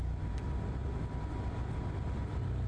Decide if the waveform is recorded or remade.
recorded